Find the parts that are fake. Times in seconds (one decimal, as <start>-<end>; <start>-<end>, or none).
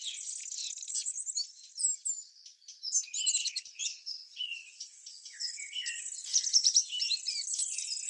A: 3.4-6.0